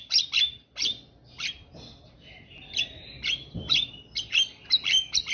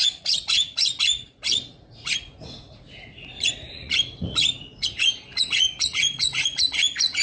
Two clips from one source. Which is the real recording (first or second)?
first